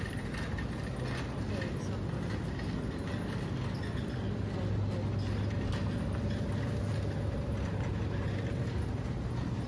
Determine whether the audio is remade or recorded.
recorded